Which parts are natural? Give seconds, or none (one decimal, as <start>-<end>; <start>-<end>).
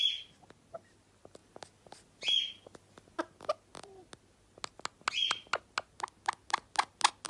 0.0-7.3